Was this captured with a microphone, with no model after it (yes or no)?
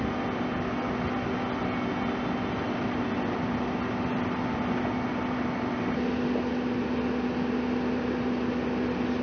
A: yes